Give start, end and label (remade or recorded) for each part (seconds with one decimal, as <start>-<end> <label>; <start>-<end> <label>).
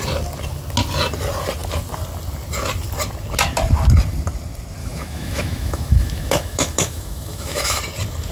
0.0-4.8 recorded; 4.8-7.8 remade; 7.8-8.3 recorded